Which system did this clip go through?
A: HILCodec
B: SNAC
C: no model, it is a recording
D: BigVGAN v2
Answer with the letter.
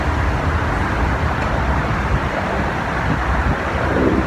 D